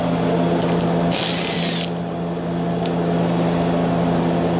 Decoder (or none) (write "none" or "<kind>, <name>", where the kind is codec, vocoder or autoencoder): none